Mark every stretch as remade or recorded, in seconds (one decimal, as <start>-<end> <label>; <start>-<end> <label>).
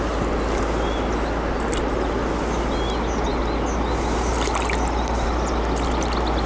0.0-6.5 recorded